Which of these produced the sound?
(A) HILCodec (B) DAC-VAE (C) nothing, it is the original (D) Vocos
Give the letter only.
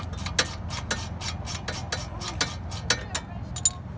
C